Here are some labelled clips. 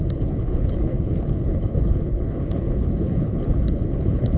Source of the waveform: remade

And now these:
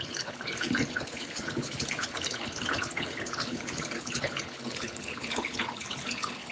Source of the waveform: remade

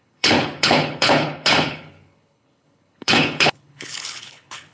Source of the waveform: remade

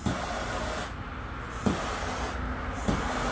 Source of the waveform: recorded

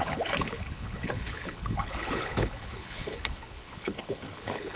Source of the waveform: remade